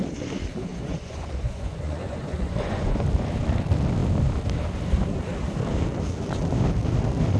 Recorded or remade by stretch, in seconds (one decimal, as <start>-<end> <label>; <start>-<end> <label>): 0.0-0.7 recorded; 0.7-3.1 remade; 3.1-7.4 recorded